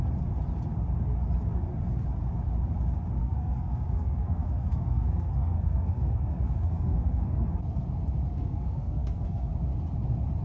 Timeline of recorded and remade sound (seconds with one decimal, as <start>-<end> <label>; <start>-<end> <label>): 0.0-3.2 recorded; 3.2-7.5 remade; 7.5-8.3 recorded; 8.3-9.5 remade; 9.5-10.4 recorded